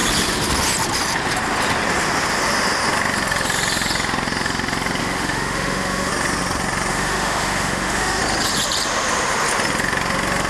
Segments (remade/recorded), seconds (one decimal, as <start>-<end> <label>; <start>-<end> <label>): 0.0-5.0 recorded; 5.0-6.1 remade; 6.1-6.9 recorded; 6.9-8.2 remade; 8.2-10.5 recorded